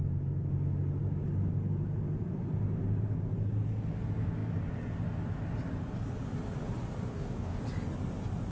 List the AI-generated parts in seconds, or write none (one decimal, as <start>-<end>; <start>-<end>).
7.1-7.6